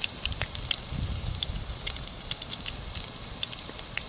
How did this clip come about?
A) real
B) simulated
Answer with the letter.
A